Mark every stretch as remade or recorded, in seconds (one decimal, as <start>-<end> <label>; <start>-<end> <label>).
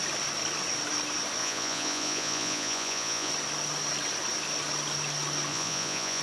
0.0-1.4 recorded; 1.4-3.3 remade; 3.3-5.5 recorded; 5.5-6.2 remade